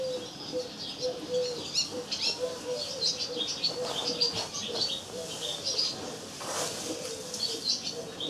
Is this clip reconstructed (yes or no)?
no